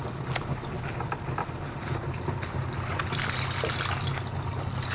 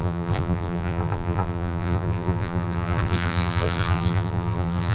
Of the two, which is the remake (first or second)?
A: second